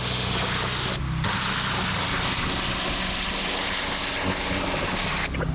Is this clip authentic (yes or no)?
yes